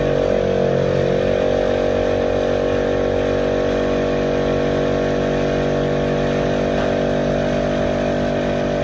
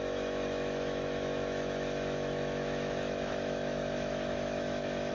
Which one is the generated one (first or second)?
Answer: second